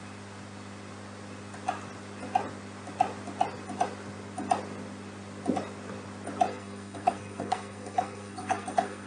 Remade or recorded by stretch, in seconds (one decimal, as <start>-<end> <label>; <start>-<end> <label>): 0.0-6.5 recorded; 6.5-9.1 remade